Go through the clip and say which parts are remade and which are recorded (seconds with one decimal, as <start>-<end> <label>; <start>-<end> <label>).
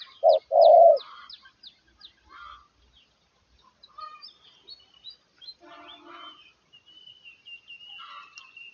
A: 0.0-8.7 recorded